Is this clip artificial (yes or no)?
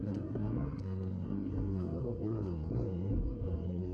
yes